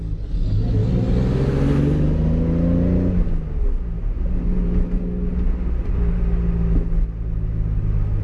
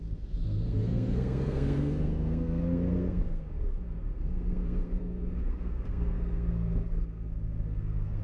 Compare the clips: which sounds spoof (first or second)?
second